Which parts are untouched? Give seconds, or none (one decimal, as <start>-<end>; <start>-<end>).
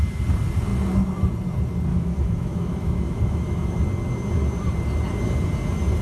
0.0-1.9; 3.8-6.0